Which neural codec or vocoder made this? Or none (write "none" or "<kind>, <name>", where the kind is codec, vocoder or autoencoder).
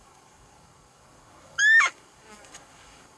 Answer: codec, DAC